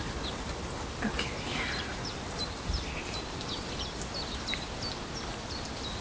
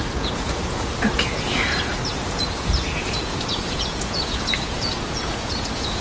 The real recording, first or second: first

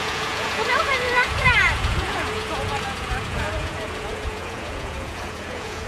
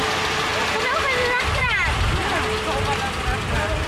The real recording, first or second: second